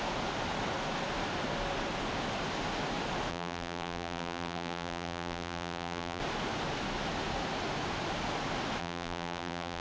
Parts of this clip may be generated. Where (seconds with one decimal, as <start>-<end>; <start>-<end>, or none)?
3.3-6.2; 8.8-9.8